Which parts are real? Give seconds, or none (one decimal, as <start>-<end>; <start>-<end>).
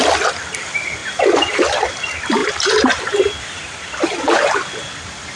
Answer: 0.0-1.0; 1.9-2.4; 3.0-5.4